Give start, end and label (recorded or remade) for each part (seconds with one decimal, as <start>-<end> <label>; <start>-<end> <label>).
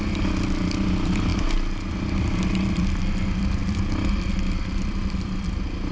0.0-5.9 recorded